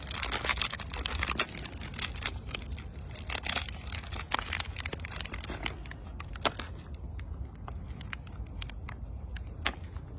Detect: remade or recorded recorded